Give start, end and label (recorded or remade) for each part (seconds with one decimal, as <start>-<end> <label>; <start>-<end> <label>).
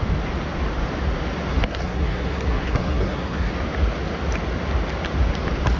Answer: 0.0-1.5 recorded; 1.5-3.5 remade; 3.5-5.8 recorded